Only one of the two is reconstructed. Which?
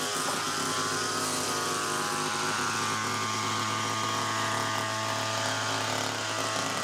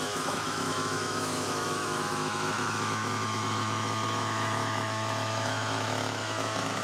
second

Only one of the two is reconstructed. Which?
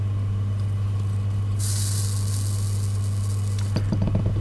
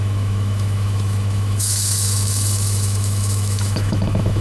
second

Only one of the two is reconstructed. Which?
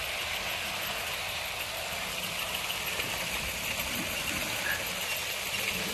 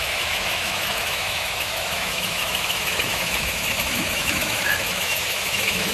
second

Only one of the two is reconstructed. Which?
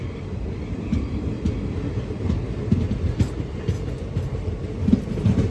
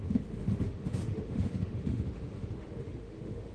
second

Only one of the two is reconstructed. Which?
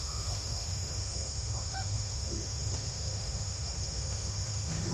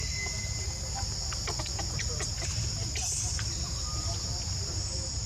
first